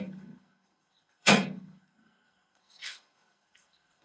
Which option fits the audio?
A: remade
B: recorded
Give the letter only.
A